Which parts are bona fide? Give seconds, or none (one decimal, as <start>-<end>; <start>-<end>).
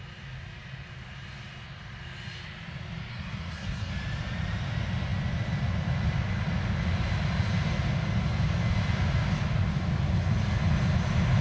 0.0-3.1; 3.9-11.4